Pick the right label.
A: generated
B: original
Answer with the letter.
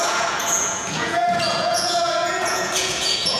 A